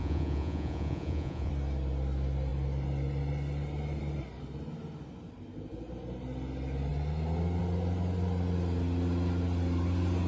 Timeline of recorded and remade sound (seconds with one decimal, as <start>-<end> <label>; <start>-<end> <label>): 0.0-1.5 remade; 1.5-10.3 recorded